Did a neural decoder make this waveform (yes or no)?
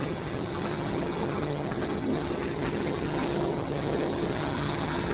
yes